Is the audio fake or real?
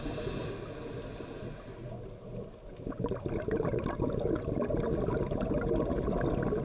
real